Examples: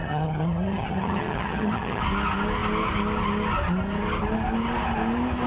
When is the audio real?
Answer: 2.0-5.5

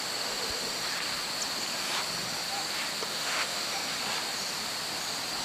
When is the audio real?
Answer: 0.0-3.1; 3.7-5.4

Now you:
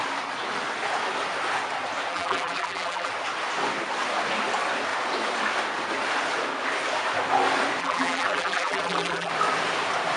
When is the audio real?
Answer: 0.0-2.1; 3.1-7.8; 9.3-10.2

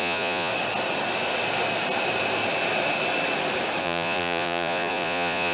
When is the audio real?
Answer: 0.5-3.8

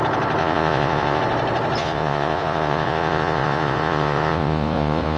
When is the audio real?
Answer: 0.0-0.4; 1.2-1.8

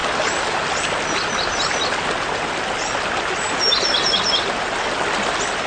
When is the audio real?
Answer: 0.0-5.7